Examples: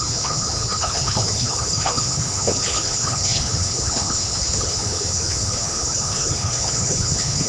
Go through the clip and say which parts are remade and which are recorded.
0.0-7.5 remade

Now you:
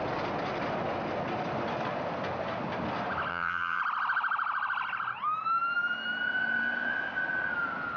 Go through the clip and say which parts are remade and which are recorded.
0.0-3.3 recorded; 3.3-3.8 remade; 3.8-8.0 recorded